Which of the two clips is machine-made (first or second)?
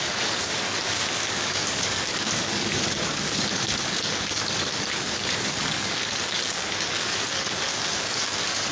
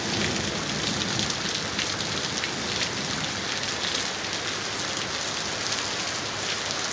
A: first